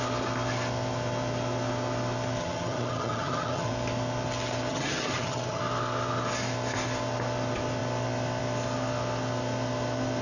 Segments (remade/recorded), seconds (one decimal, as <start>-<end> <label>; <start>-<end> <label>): 0.0-2.4 recorded; 2.4-3.7 remade; 3.7-4.7 recorded; 4.7-5.6 remade; 5.6-10.2 recorded